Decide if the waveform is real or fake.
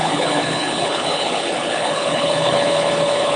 fake